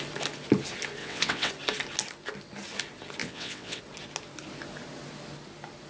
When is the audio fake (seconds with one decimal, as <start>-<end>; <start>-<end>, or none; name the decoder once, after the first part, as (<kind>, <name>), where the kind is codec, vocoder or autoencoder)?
1.0-1.5 (vocoder, WaveNeXt); 3.2-3.8